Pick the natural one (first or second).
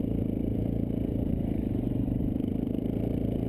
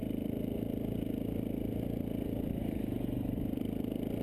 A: second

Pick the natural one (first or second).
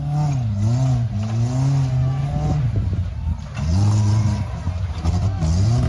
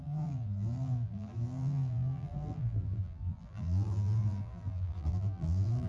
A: first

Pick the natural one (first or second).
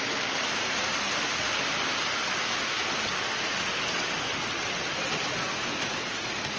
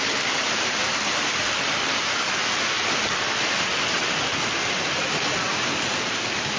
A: first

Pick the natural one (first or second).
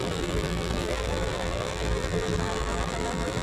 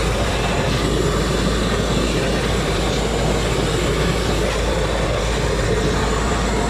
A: second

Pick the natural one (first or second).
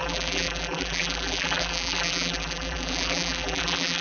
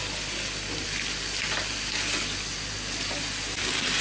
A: second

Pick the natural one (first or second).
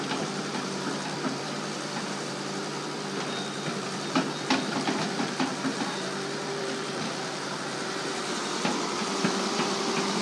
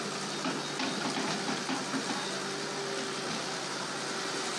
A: second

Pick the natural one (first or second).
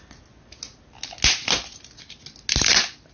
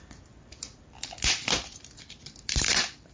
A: first